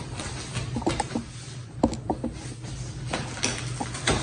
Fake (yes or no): no